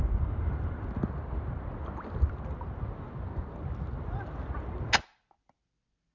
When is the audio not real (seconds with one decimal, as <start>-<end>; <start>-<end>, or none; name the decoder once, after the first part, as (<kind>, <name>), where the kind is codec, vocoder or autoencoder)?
0.0-0.9 (vocoder, BigVGAN v2)